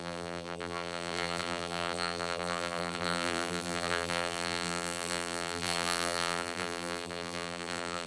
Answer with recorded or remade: remade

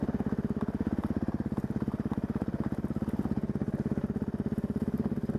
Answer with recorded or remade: recorded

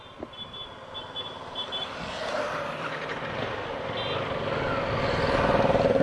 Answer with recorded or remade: remade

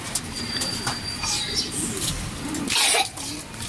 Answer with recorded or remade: recorded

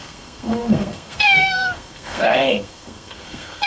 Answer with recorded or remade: remade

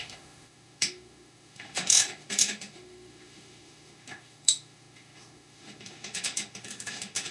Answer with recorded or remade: remade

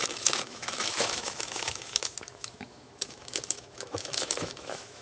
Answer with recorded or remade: remade